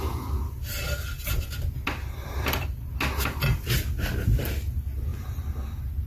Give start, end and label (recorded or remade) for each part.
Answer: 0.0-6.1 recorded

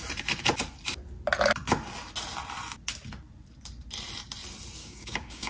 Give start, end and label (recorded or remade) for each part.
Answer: 0.0-4.8 recorded; 4.8-5.5 remade

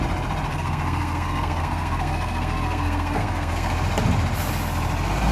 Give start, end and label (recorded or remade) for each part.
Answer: 0.0-0.5 recorded; 0.5-3.7 remade; 3.7-5.3 recorded

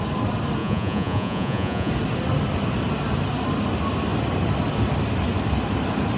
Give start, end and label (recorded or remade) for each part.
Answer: 0.0-0.6 recorded; 0.6-1.9 remade; 1.9-6.2 recorded